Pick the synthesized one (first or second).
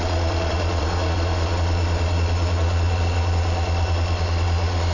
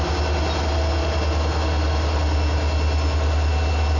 first